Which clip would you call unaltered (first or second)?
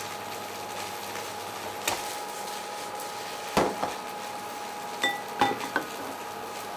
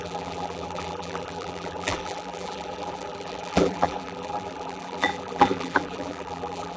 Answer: first